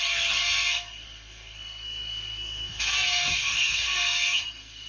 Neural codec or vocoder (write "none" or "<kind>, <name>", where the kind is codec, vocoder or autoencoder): codec, SNAC